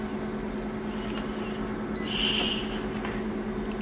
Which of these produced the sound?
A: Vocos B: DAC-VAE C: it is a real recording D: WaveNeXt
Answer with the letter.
C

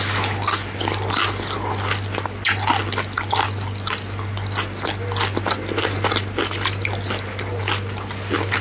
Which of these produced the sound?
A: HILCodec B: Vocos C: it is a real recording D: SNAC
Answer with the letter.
C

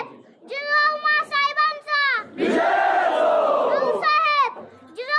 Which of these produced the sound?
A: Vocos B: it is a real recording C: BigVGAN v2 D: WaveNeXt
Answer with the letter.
B